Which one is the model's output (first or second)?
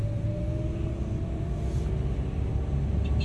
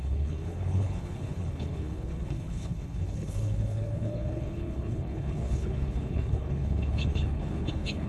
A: second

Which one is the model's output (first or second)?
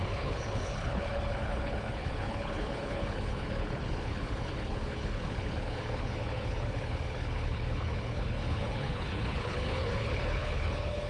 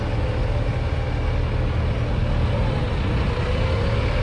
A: first